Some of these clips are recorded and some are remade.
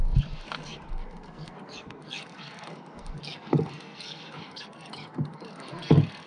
remade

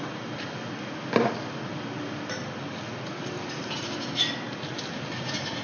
recorded